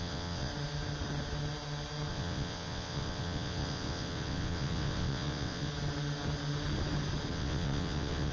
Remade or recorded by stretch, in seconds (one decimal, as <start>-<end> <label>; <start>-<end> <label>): 0.0-0.5 remade; 0.5-2.1 recorded; 2.1-5.7 remade; 5.7-7.3 recorded; 7.3-8.3 remade